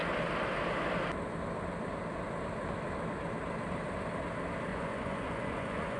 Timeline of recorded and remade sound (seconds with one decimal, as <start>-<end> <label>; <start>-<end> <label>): 0.0-4.7 recorded; 4.7-6.0 remade